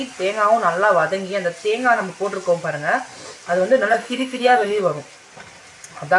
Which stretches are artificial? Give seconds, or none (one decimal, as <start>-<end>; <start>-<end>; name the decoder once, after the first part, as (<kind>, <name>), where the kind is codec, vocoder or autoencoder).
3.9-4.8 (autoencoder, DAC-VAE)